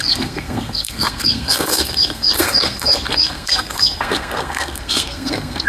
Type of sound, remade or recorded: remade